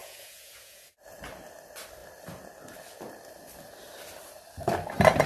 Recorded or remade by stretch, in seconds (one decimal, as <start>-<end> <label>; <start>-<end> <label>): 0.0-0.9 remade; 0.9-5.3 recorded